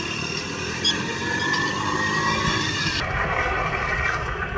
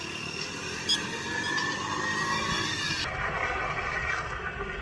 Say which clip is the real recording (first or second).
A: second